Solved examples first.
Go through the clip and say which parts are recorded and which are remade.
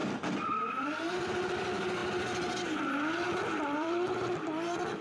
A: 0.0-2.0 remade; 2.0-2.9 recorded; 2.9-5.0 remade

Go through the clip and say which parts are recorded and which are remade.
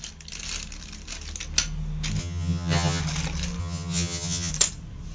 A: 0.0-2.2 recorded; 2.2-3.0 remade; 3.0-3.6 recorded; 3.6-4.5 remade; 4.5-5.1 recorded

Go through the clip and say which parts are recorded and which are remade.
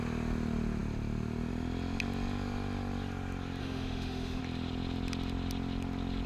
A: 0.0-3.6 recorded; 3.6-4.4 remade; 4.4-6.3 recorded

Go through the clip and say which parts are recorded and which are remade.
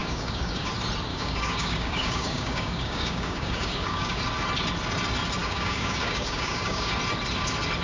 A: 0.0-0.7 remade; 0.7-1.1 recorded; 1.1-4.2 remade; 4.2-5.4 recorded; 5.4-6.9 remade; 6.9-7.8 recorded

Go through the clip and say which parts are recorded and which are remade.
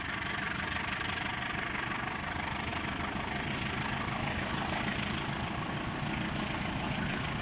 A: 0.0-7.4 recorded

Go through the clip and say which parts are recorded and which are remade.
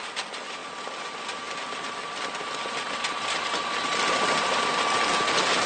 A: 0.0-5.7 recorded